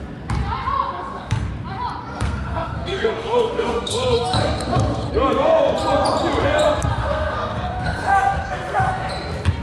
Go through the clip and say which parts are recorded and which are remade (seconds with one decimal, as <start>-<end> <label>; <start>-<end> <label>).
0.0-1.0 recorded; 1.0-1.5 remade; 1.5-2.1 recorded; 2.1-5.1 remade; 5.1-7.0 recorded; 7.0-9.1 remade; 9.1-9.6 recorded